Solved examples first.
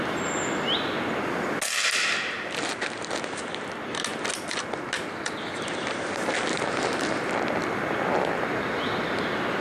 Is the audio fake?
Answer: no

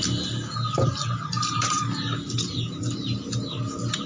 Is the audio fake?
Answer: no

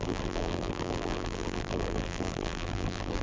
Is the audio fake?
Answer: yes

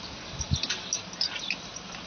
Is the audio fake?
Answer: no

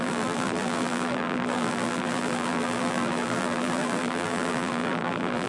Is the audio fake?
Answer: yes